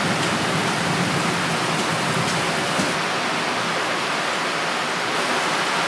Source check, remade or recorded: recorded